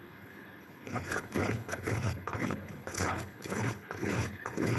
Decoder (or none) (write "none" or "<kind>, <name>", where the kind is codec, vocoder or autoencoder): codec, HILCodec